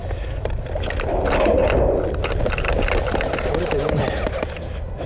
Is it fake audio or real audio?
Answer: real